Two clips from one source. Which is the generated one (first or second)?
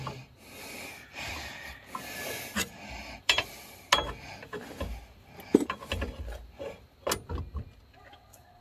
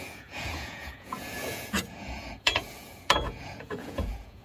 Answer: second